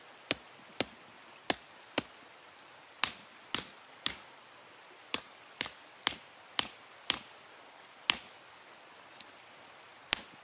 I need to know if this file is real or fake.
real